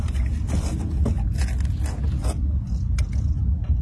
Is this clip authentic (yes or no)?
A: yes